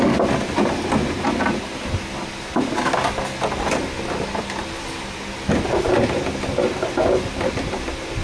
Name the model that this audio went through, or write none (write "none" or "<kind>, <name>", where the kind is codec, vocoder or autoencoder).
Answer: none